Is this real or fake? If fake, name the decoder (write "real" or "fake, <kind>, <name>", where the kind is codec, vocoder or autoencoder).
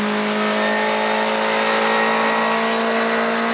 real